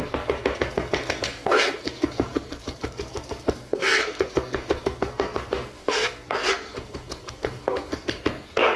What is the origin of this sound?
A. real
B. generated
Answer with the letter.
B